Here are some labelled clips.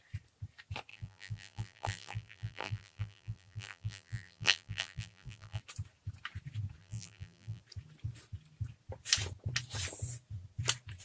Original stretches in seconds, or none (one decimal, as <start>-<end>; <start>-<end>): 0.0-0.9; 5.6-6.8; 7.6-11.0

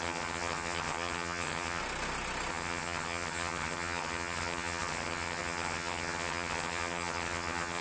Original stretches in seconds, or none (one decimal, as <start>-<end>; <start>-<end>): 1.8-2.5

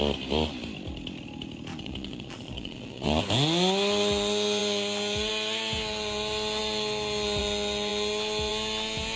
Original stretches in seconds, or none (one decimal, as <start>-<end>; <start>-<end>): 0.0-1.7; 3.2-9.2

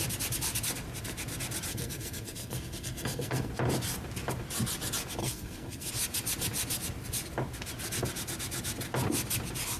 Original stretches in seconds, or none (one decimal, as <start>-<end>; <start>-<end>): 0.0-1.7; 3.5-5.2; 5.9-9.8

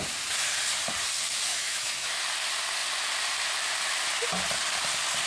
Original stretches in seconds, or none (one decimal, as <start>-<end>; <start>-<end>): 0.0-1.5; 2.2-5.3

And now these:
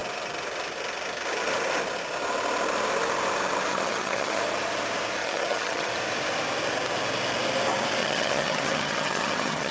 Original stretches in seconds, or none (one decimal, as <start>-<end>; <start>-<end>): 0.0-3.7; 4.4-5.2; 5.9-8.0

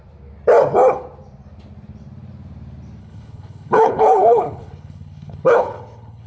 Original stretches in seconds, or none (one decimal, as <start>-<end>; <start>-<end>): 0.0-3.0